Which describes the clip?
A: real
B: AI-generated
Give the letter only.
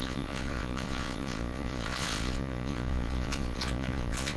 B